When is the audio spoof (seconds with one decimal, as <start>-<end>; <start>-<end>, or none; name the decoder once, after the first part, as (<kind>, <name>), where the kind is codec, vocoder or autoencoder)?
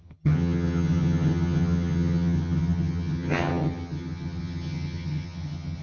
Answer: 0.0-5.8 (vocoder, HiFi-GAN)